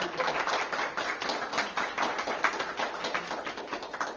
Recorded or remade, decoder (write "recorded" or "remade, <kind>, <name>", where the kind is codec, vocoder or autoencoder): recorded